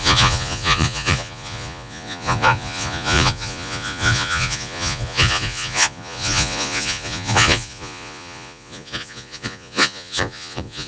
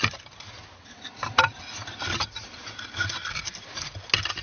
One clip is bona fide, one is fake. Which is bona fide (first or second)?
second